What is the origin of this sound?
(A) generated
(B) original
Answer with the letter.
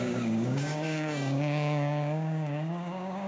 A